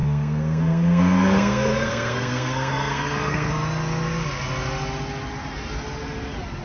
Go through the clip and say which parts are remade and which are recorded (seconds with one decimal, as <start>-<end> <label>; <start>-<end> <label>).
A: 0.0-3.5 remade; 3.5-6.6 recorded